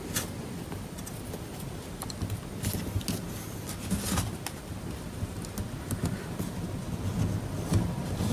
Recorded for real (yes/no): yes